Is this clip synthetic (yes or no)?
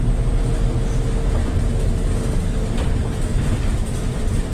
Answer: no